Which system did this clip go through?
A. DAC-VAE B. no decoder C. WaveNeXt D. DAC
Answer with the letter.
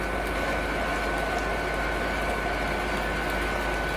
B